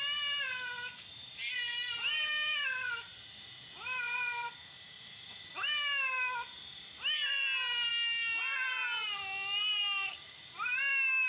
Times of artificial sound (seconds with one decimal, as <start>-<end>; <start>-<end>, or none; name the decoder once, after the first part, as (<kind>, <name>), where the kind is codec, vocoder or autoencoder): 1.2-4.5 (vocoder, BigVGAN v2)